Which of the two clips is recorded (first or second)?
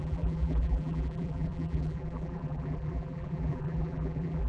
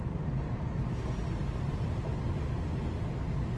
second